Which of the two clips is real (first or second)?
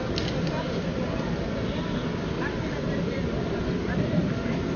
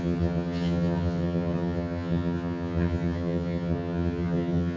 first